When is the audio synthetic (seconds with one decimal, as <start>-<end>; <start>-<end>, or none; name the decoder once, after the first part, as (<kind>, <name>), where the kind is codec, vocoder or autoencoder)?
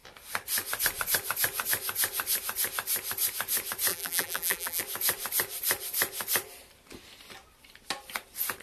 3.9-4.8 (vocoder, BigVGAN v2)